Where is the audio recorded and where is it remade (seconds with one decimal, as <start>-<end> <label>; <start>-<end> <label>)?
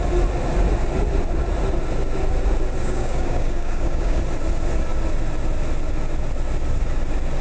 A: 0.0-2.8 recorded; 2.8-4.2 remade; 4.2-7.4 recorded